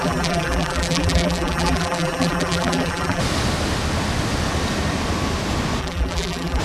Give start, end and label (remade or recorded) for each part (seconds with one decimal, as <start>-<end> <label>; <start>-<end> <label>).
0.0-3.2 remade; 3.2-5.8 recorded; 5.8-6.6 remade